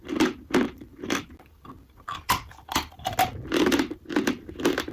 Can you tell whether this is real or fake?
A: real